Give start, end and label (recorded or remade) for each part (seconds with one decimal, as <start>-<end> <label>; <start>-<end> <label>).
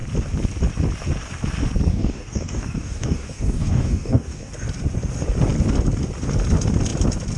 0.0-1.9 recorded; 1.9-4.5 remade; 4.5-7.4 recorded